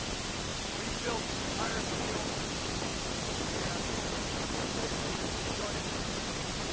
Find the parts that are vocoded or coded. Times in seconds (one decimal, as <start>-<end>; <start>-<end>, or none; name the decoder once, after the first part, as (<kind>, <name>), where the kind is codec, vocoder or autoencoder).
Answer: none